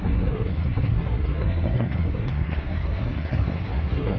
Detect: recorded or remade remade